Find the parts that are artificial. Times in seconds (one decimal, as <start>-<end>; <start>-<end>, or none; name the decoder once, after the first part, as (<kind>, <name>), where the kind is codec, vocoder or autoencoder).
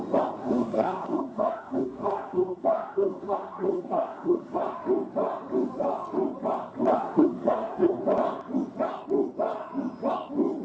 0.4-4.6 (codec, SNAC); 6.9-8.0